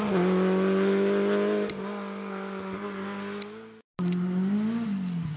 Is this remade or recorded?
recorded